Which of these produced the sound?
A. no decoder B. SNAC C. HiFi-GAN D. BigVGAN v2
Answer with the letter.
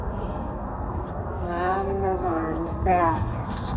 B